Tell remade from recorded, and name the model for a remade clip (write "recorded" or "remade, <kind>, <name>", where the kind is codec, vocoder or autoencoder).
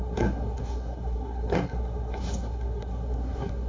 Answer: remade, codec, SNAC